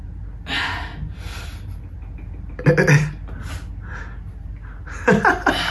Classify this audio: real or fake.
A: real